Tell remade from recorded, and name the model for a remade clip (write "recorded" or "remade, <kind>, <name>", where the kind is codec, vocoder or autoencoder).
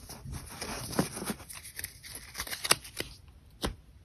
recorded